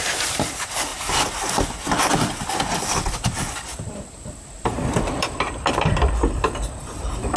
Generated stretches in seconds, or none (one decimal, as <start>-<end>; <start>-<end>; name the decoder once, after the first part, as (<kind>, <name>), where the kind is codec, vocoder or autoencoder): 3.7-6.1 (vocoder, BigVGAN v2)